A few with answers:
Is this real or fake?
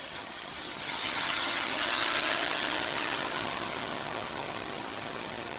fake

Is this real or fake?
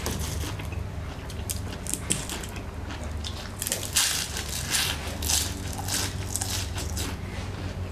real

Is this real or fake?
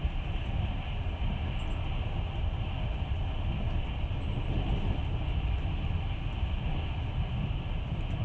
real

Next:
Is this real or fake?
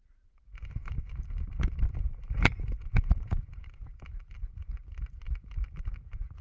fake